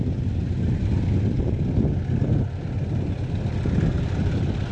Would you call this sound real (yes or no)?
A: yes